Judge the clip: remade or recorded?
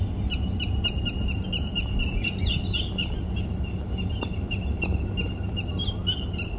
recorded